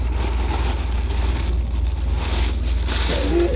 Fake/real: real